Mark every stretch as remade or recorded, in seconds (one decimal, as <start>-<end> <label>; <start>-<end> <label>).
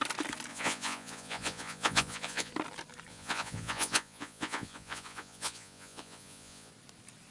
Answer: 0.0-0.5 recorded; 0.5-2.5 remade; 2.5-3.1 recorded; 3.1-6.7 remade; 6.7-7.3 recorded